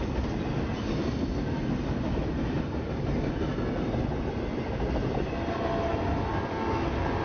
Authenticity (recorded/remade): recorded